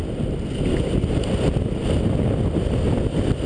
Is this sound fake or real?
real